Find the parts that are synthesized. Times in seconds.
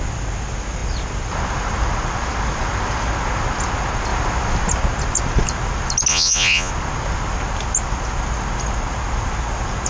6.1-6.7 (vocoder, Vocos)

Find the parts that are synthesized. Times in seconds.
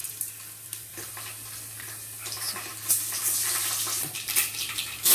0.0-1.1 (vocoder, BigVGAN v2); 3.6-5.1